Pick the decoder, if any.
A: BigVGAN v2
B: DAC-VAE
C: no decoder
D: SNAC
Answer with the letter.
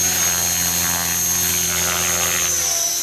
C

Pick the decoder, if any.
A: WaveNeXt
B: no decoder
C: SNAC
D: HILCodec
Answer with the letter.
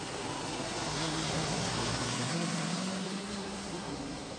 C